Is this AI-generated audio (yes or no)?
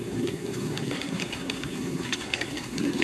yes